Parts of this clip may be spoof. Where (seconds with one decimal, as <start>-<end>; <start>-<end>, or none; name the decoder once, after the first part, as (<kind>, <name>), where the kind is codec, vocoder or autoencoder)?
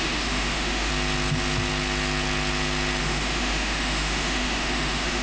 0.0-0.9 (autoencoder, DAC-VAE); 3.0-5.2